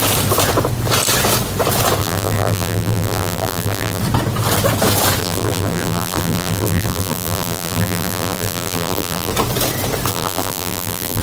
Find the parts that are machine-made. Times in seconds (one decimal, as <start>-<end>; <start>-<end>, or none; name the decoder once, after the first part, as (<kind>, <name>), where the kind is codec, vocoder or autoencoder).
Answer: 2.0-4.0 (vocoder, BigVGAN v2); 5.2-9.3; 10.1-11.2